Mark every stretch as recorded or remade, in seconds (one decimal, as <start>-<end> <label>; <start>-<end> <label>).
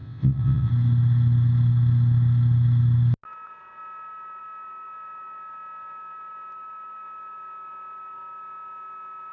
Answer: 0.0-0.7 remade; 0.7-9.3 recorded